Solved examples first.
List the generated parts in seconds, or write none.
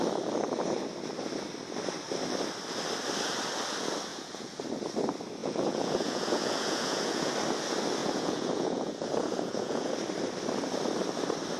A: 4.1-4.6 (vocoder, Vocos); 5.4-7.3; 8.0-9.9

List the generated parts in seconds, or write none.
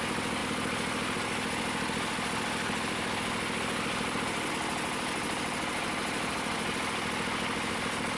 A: none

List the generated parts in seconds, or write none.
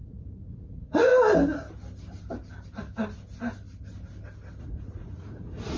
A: 0.0-1.1 (vocoder, Vocos); 4.6-5.8